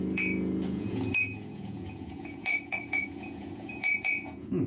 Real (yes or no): no